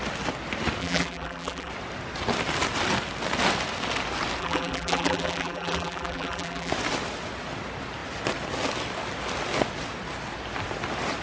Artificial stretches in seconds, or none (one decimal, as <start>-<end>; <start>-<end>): 0.8-1.7; 4.4-6.7